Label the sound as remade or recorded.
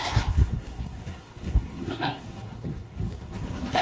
remade